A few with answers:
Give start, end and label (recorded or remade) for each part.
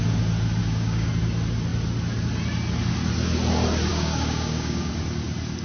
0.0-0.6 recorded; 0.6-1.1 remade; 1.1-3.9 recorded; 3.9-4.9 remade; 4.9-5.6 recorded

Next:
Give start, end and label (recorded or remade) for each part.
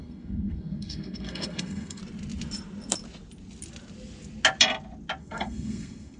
0.0-2.0 remade; 2.0-5.2 recorded; 5.2-6.2 remade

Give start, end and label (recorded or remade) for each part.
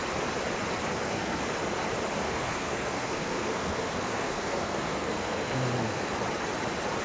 0.0-0.9 recorded; 0.9-1.4 remade; 1.4-2.2 recorded; 2.2-6.1 remade; 6.1-7.0 recorded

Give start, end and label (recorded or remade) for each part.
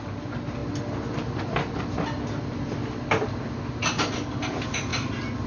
0.0-5.5 recorded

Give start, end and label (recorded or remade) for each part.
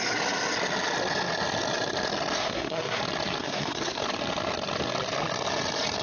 0.0-2.4 recorded; 2.4-3.0 remade; 3.0-3.4 recorded; 3.4-4.0 remade; 4.0-6.0 recorded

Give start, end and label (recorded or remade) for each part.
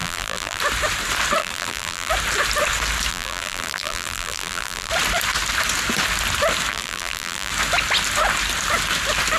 0.0-0.6 remade; 0.6-1.4 recorded; 1.4-2.1 remade; 2.1-3.1 recorded; 3.1-4.9 remade; 4.9-6.7 recorded; 6.7-7.5 remade; 7.5-9.4 recorded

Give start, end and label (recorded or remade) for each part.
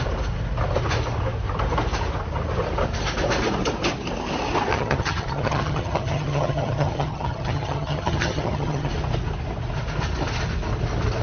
0.0-4.7 recorded; 4.7-8.9 remade; 8.9-11.2 recorded